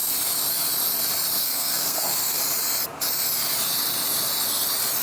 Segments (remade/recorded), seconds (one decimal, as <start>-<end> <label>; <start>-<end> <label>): 0.0-1.4 recorded; 1.4-2.4 remade; 2.4-5.0 recorded